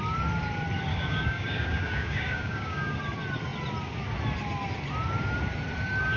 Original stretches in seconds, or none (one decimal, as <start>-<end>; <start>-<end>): 0.0-0.9; 3.0-6.2